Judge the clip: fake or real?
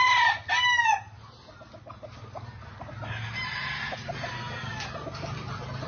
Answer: real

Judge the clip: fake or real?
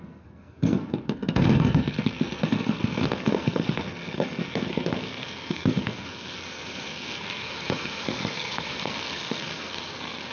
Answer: fake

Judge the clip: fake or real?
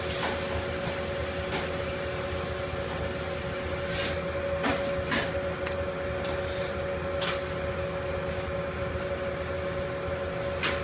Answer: real